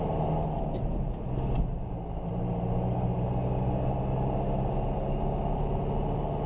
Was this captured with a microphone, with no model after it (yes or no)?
yes